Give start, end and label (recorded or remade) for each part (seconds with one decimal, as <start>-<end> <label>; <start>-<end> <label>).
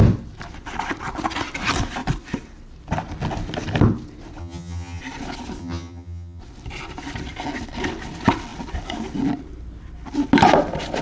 0.0-4.4 recorded; 4.4-5.0 remade; 5.0-5.6 recorded; 5.6-6.4 remade; 6.4-11.0 recorded